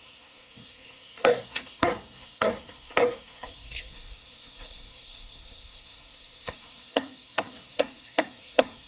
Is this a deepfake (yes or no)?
yes